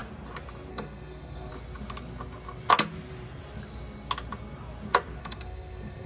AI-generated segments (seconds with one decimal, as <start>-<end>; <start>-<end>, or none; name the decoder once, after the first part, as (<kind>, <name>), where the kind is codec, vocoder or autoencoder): 0.7-1.5 (codec, SNAC); 5.2-6.1